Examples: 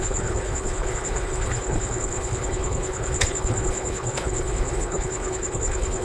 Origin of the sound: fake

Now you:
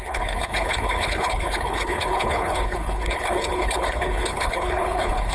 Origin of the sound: fake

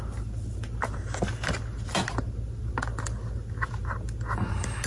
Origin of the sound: real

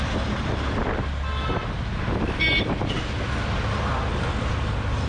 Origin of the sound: real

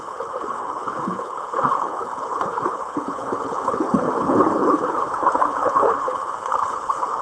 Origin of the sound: fake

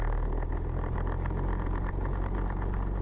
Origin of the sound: real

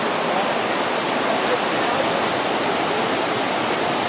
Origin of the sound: real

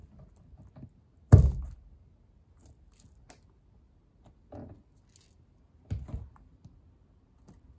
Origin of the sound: real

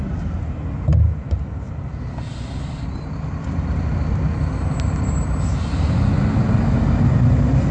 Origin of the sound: real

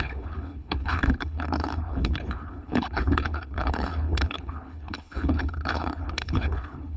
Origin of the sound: fake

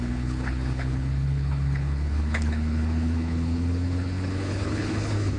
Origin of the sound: fake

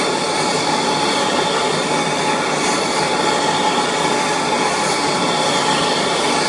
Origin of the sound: real